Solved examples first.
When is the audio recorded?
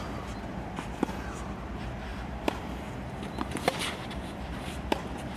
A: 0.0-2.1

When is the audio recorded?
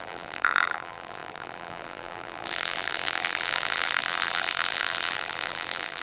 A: none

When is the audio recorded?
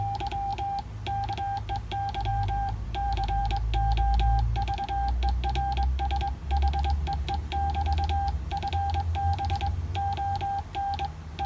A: 0.0-2.3; 3.4-11.5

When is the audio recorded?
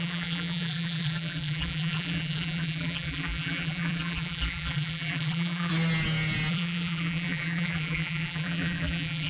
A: 5.7-6.5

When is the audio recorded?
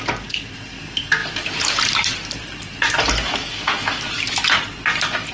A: 0.0-1.2; 3.1-5.3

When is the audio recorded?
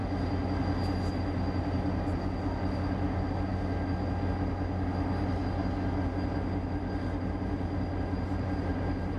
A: 0.0-9.2